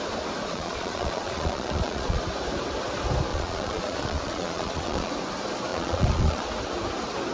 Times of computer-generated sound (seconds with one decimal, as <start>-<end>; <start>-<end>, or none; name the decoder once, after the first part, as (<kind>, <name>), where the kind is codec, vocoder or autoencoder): 0.5-2.2 (vocoder, Vocos); 3.3-5.1; 5.7-6.5